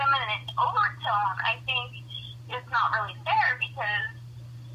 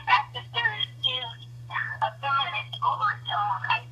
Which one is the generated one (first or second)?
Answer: second